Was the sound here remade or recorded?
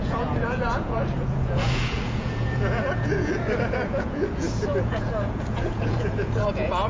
remade